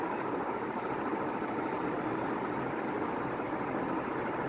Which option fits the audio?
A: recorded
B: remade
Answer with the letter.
A